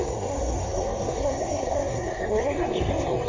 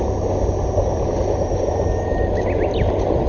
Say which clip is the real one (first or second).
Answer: second